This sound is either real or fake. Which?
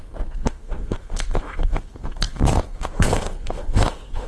fake